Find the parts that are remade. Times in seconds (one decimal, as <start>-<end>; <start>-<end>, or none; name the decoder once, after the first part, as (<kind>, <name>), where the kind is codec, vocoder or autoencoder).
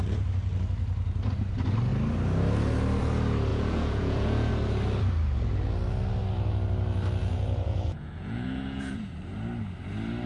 3.5-4.5 (vocoder, Vocos); 7.2-9.1